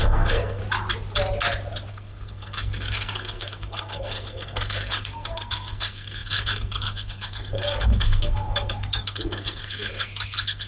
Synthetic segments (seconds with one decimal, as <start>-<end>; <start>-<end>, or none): 0.0-0.6; 1.9-10.7